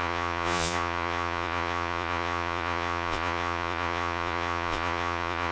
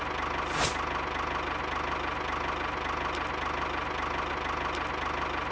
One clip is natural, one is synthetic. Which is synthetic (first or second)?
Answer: first